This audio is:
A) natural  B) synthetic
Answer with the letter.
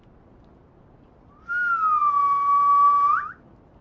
A